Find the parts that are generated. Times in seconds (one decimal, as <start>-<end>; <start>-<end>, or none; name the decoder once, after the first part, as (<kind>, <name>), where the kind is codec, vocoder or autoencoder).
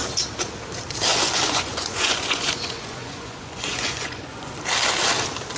1.1-4.5 (vocoder, Vocos)